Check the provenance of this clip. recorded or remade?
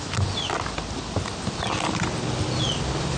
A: recorded